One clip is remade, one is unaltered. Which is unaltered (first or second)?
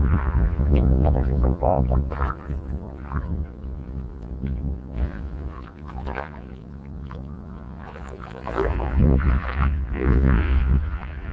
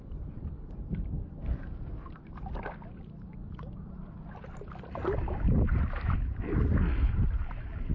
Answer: second